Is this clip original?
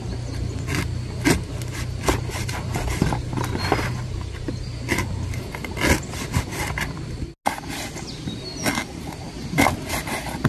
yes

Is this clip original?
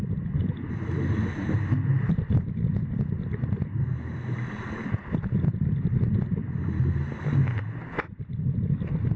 yes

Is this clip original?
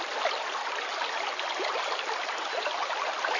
yes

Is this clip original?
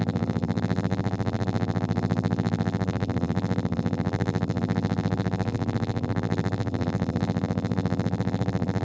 no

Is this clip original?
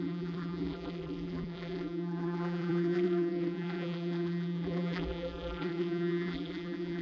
no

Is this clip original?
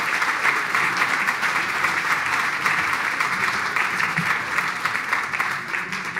no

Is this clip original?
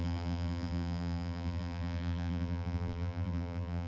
no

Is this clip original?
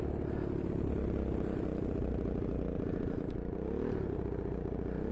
yes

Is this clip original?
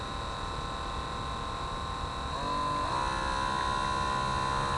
yes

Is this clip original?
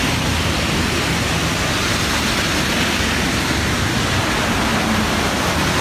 yes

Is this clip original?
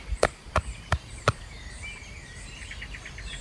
no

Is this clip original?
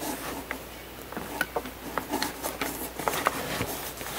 yes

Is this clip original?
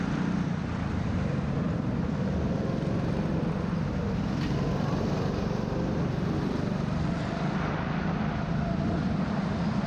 yes